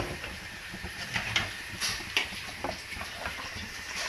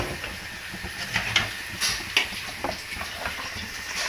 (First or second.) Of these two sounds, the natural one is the second